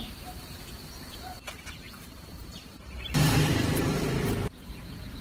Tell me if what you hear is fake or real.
fake